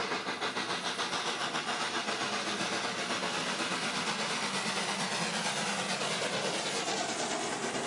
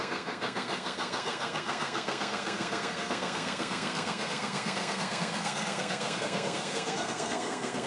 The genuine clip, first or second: first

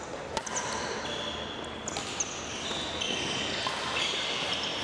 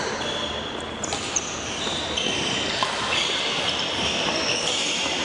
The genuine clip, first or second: first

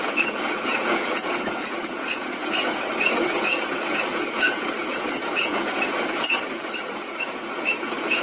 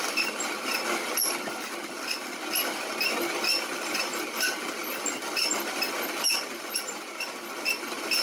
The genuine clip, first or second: second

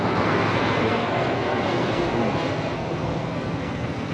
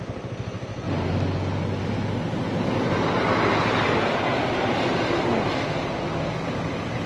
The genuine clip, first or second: second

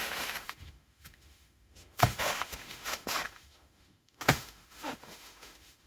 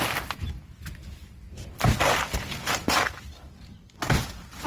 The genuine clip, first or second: second